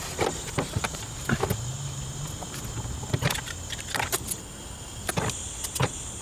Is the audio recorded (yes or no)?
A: yes